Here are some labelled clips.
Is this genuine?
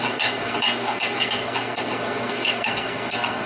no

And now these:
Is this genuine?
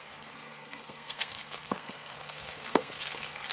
no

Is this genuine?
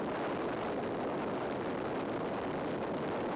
yes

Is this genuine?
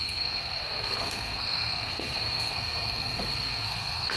no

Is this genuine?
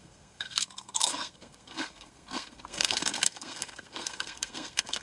no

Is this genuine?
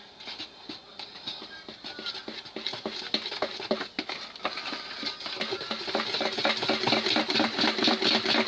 yes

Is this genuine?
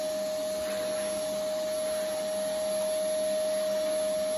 yes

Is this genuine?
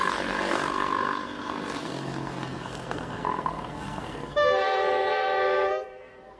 no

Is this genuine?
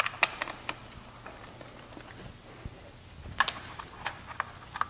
yes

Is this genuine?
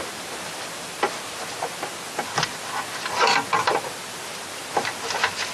yes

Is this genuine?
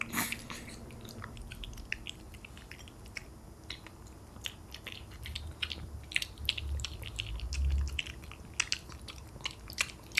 yes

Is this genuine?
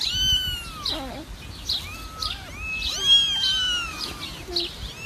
yes